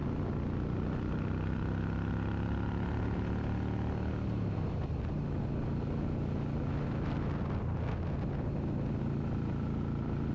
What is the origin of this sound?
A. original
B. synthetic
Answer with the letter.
A